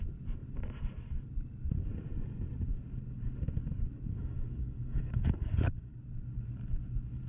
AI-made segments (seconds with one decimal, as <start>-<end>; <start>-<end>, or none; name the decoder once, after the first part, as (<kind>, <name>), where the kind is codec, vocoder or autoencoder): 4.2-5.9 (codec, DAC)